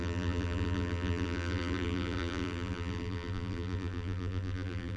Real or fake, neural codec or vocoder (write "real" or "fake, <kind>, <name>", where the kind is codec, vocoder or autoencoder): fake, vocoder, BigVGAN v2